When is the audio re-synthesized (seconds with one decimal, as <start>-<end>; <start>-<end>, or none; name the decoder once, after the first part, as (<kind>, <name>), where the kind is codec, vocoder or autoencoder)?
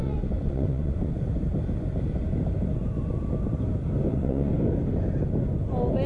0.0-1.1 (vocoder, Vocos); 4.1-4.5